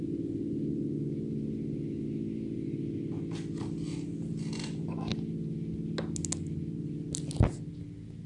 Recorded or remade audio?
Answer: recorded